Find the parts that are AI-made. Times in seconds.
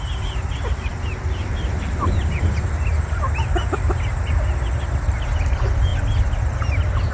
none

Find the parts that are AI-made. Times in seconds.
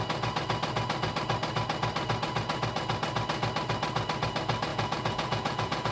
4.7-5.9 (vocoder, Vocos)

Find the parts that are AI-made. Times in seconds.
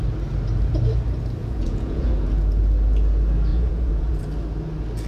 1.4-2.1 (vocoder, Vocos); 3.5-4.2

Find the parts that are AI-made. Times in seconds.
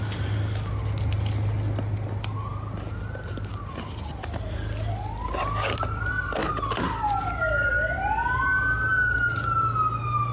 none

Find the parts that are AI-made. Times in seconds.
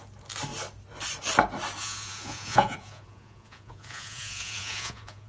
1.8-5.3 (vocoder, Vocos)